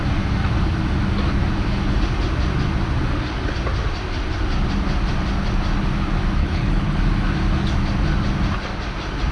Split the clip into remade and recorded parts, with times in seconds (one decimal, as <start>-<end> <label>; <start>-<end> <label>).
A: 0.0-6.4 recorded; 6.4-7.0 remade; 7.0-9.3 recorded